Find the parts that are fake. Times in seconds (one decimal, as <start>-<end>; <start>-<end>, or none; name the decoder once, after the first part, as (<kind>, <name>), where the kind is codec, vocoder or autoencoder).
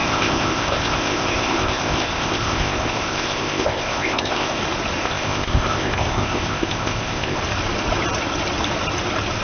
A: 0.0-4.6 (codec, ZipCodec); 5.0-7.4